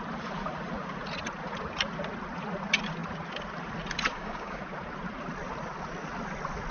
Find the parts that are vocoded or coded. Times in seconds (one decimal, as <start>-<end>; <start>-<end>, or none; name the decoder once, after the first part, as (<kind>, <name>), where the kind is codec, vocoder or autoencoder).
4.1-4.6 (codec, DAC)